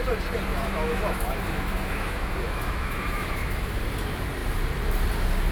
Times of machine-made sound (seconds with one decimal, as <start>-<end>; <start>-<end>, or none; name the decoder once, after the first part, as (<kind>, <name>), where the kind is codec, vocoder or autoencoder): 0.5-3.8 (autoencoder, DAC-VAE)